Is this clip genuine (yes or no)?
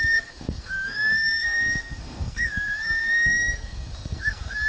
no